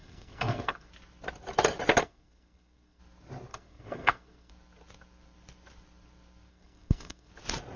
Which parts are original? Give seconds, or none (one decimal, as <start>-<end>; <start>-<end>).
0.9-2.0; 3.0-3.5; 4.5-6.5; 7.3-7.8